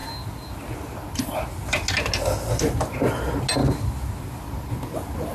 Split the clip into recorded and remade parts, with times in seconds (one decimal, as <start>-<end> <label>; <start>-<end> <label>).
0.0-5.3 recorded